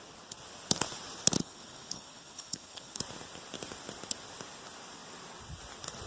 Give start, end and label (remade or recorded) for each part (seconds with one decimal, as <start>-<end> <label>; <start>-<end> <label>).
0.0-1.4 recorded; 1.4-3.0 remade; 3.0-6.1 recorded